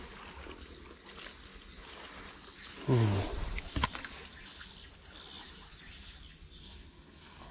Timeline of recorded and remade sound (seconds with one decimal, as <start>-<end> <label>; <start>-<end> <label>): 0.0-6.6 recorded; 6.6-7.5 remade